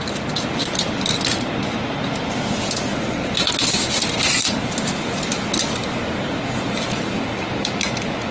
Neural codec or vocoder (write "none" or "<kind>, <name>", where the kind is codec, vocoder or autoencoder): none